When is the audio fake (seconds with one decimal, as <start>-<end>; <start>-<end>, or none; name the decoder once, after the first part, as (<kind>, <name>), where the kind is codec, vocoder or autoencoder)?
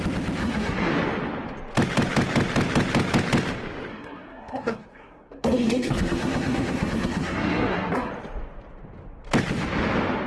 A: 0.4-0.9 (codec, SNAC); 3.9-8.1